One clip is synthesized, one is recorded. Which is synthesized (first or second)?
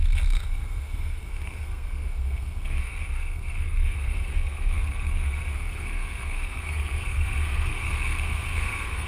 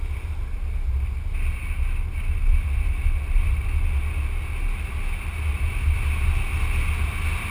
first